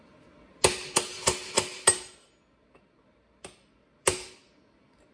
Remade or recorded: recorded